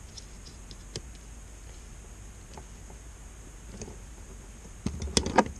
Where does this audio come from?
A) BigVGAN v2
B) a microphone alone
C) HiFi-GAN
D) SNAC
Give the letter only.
B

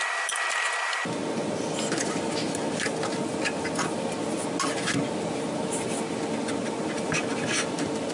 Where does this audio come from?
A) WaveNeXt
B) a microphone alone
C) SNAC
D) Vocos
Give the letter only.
B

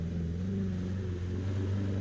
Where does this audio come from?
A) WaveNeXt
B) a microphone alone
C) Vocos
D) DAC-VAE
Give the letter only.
B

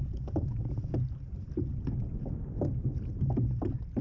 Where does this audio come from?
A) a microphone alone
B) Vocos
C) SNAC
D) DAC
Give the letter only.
A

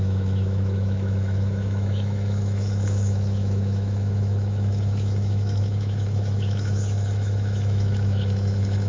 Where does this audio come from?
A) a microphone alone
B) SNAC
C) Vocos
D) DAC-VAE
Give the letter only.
D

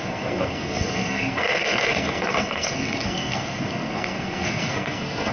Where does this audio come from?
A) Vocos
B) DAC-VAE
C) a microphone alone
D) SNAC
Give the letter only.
D